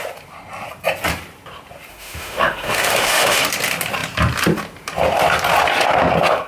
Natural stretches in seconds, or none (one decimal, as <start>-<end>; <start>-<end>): 0.0-1.9; 3.4-6.5